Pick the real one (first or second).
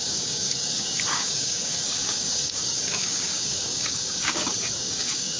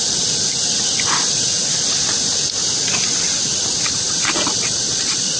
second